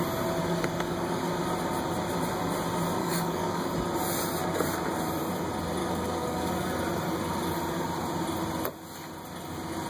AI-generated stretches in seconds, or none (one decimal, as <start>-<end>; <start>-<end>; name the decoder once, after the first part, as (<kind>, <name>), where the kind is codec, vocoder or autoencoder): 0.4-1.3 (codec, DAC); 3.0-3.7; 5.8-6.5